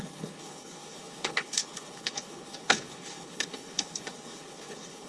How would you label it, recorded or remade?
remade